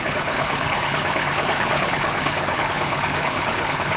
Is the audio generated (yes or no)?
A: yes